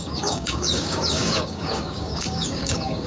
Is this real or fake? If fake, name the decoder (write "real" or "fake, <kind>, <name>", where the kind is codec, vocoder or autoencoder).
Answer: fake, codec, DAC